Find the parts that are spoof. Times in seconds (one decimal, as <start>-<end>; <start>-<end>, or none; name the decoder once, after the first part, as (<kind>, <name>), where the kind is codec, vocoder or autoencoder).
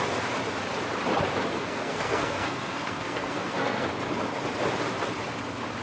1.5-3.9 (codec, SNAC)